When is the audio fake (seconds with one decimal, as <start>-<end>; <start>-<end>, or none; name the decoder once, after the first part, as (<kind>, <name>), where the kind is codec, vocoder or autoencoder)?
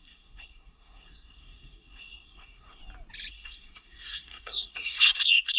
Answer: 0.0-2.8 (codec, SNAC); 3.3-5.6